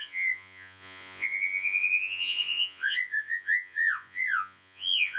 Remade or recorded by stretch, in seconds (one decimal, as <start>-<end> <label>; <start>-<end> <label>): 0.0-5.2 remade